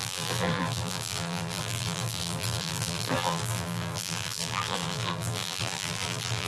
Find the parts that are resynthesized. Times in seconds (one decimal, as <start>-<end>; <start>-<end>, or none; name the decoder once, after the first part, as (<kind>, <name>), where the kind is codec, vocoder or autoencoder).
0.0-6.5 (vocoder, BigVGAN v2)